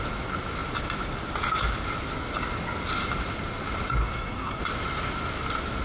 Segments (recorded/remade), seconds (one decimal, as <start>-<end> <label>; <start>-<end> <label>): 0.0-4.0 recorded; 4.0-4.6 remade; 4.6-5.8 recorded